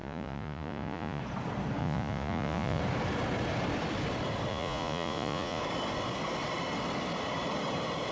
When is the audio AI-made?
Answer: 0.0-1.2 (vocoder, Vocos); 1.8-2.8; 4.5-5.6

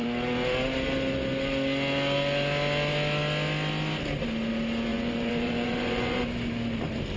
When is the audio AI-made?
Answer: 4.9-6.2 (vocoder, Vocos)

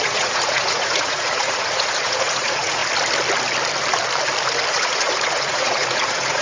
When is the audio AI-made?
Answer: 0.0-2.8 (vocoder, Vocos); 4.7-6.4

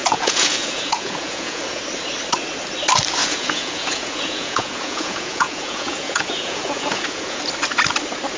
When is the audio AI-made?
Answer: 0.0-1.8 (vocoder, Vocos); 3.2-7.4

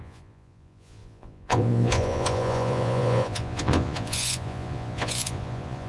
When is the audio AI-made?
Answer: 0.0-5.9 (vocoder, Vocos)

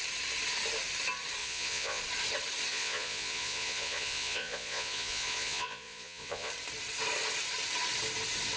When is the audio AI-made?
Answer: 1.4-2.0 (vocoder, Vocos); 2.7-6.5